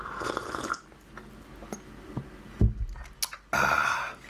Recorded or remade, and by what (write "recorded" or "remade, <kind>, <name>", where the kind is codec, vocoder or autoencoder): recorded